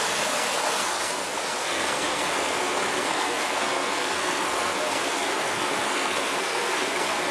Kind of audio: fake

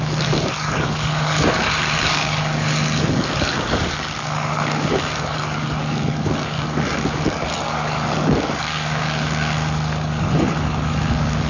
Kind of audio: fake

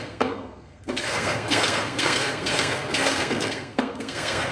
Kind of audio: fake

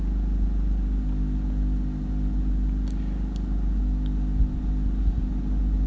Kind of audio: real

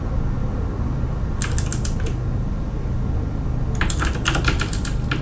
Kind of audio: real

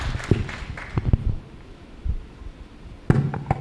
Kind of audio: real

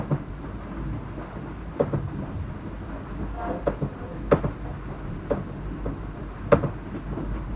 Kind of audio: real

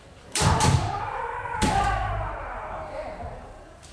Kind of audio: fake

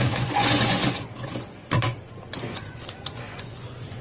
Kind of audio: fake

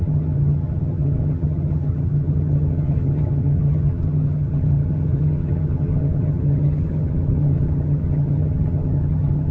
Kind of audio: fake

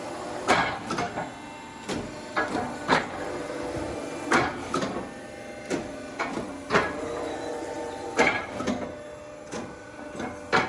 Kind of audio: real